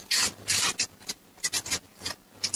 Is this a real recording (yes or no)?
yes